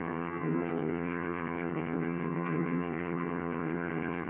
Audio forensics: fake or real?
fake